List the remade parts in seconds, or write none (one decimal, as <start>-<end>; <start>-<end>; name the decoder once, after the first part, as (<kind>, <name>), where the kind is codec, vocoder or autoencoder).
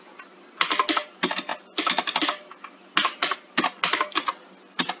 none